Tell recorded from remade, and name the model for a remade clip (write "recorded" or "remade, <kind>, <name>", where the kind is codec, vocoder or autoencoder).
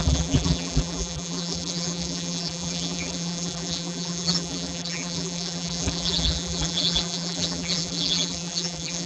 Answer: remade, vocoder, BigVGAN v2